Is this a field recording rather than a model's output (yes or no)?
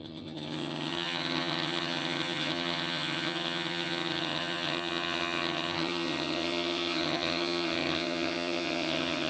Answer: no